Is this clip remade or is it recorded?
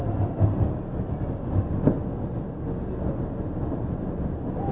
recorded